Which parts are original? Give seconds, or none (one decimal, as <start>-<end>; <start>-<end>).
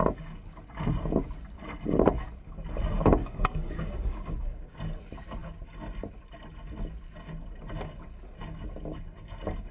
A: 0.0-3.2; 4.8-9.7